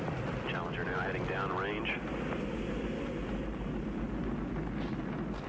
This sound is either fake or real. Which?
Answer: real